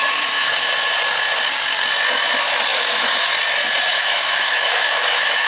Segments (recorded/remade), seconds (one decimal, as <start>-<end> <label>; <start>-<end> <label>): 0.0-0.7 remade; 0.7-2.7 recorded; 2.7-3.3 remade; 3.3-3.9 recorded; 3.9-5.5 remade